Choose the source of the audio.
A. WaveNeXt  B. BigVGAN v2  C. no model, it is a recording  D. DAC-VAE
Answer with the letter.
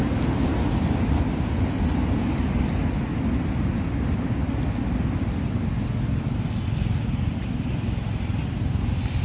C